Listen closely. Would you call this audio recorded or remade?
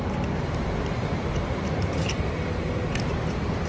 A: recorded